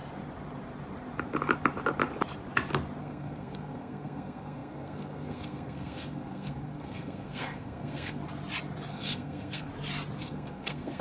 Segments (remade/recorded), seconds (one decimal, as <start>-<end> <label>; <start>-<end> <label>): 0.0-3.0 recorded; 3.0-8.2 remade; 8.2-8.9 recorded; 8.9-9.7 remade; 9.7-10.2 recorded; 10.2-11.0 remade